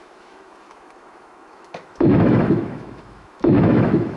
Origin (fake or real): fake